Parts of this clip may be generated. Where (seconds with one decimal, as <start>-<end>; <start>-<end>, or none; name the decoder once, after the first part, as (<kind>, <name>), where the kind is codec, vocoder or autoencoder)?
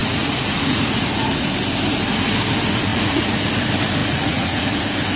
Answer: 0.0-1.5 (vocoder, Vocos); 2.9-3.5; 4.0-4.8